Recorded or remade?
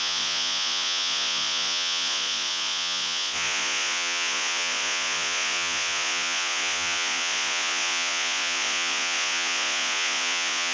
remade